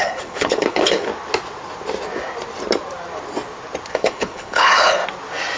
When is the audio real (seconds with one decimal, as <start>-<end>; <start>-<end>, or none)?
1.1-3.9; 5.0-5.6